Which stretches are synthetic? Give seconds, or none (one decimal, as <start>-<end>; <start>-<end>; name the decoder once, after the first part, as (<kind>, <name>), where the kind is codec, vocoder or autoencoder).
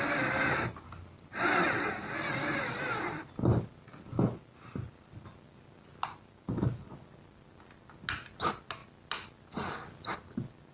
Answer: none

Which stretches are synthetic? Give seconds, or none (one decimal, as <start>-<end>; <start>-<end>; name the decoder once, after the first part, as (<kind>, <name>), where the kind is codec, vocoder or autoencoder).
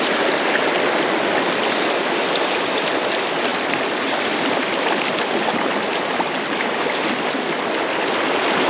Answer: none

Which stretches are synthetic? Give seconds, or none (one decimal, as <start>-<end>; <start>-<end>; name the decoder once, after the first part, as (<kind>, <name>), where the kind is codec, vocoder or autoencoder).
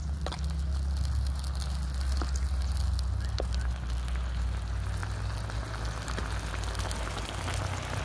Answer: none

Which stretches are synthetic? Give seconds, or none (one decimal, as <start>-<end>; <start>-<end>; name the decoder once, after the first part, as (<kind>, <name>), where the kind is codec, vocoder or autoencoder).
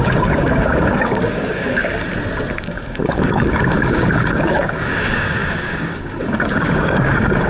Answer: 0.0-1.8 (codec, DAC); 2.5-7.5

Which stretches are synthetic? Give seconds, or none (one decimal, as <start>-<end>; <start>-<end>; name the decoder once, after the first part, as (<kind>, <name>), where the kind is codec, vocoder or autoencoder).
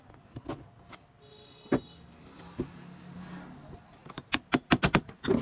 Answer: none